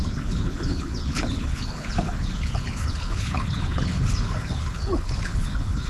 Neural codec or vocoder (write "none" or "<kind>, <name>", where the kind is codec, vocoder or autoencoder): codec, HILCodec